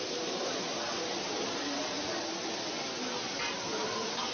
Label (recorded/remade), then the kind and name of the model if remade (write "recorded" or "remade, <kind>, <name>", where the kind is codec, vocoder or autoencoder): recorded